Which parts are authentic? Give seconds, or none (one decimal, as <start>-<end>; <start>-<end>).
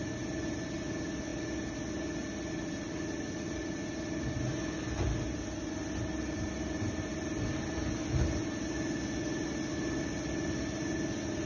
0.0-11.5